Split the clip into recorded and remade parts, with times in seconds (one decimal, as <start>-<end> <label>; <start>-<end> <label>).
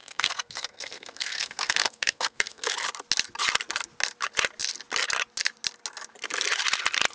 0.0-2.7 remade; 2.7-7.1 recorded